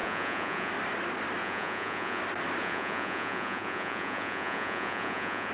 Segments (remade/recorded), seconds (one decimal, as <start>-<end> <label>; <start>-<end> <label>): 0.0-0.7 remade; 0.7-1.4 recorded; 1.4-2.2 remade; 2.2-2.6 recorded; 2.6-5.5 remade